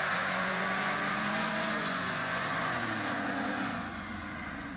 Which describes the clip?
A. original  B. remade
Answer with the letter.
B